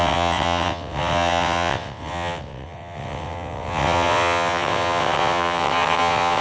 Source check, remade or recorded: remade